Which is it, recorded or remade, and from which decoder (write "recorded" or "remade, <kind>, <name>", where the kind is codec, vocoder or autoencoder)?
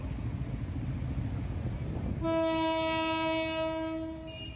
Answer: recorded